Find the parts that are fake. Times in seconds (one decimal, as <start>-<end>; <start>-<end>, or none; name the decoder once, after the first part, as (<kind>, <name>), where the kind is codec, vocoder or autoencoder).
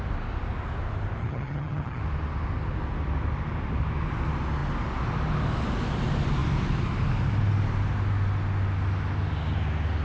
1.2-2.0 (vocoder, HiFi-GAN)